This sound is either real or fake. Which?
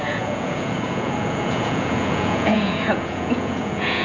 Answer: fake